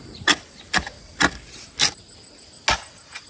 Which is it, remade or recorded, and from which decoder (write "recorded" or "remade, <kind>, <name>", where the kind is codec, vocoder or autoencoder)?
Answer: recorded